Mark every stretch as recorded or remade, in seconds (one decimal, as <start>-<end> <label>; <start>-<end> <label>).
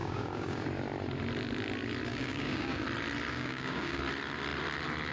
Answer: 0.0-0.7 remade; 0.7-2.1 recorded; 2.1-2.8 remade; 2.8-3.3 recorded; 3.3-4.0 remade; 4.0-5.1 recorded